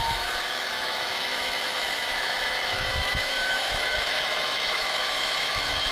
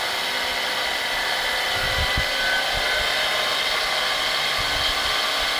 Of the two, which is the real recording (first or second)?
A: second